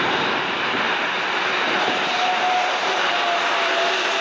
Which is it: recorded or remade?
remade